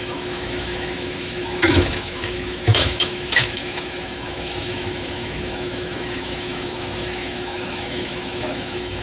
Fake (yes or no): yes